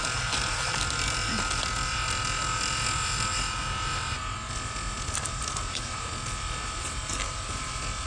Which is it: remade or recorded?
remade